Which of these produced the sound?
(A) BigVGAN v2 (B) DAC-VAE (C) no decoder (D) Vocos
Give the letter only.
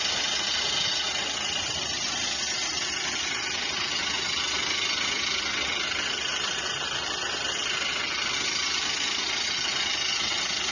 C